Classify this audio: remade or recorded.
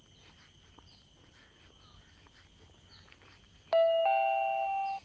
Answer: recorded